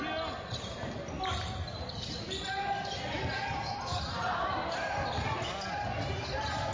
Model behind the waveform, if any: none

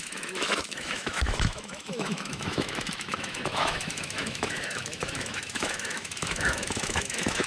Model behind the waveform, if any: autoencoder, DAC-VAE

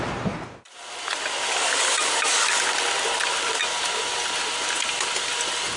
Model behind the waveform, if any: none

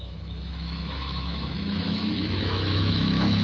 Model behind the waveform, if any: autoencoder, DAC-VAE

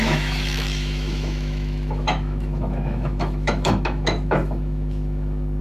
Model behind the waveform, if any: autoencoder, DAC-VAE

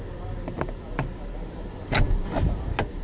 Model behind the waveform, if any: none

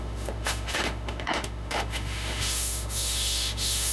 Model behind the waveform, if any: autoencoder, DAC-VAE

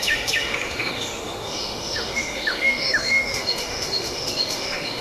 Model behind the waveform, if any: autoencoder, DAC-VAE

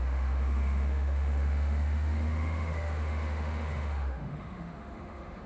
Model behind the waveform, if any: autoencoder, DAC-VAE